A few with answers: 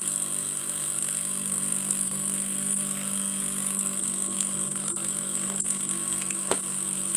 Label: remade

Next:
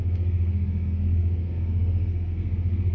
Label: remade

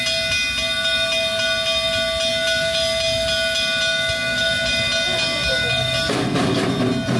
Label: recorded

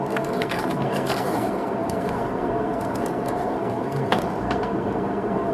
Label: remade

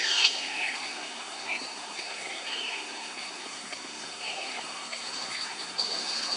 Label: remade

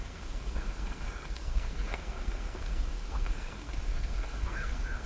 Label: remade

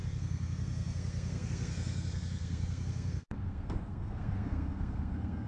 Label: remade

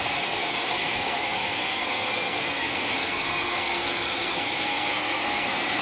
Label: remade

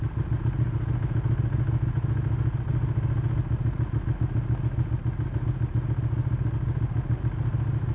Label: recorded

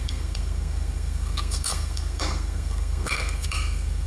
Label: remade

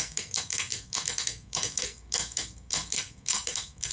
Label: remade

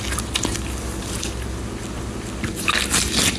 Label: recorded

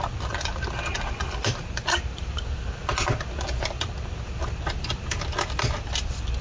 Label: recorded